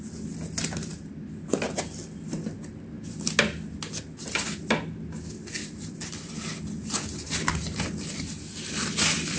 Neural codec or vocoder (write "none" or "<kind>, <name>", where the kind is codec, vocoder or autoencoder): none